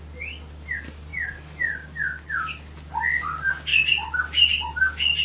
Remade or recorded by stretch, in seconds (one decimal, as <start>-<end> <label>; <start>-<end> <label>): 0.0-5.2 recorded